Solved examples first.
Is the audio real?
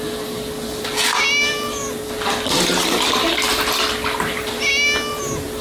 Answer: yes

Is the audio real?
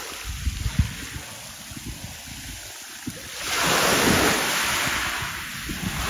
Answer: yes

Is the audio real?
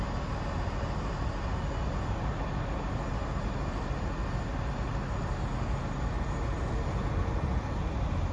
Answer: yes